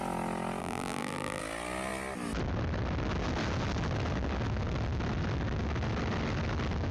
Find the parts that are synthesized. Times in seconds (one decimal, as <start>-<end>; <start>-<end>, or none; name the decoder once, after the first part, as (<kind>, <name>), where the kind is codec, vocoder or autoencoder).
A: 0.6-1.4 (vocoder, BigVGAN v2)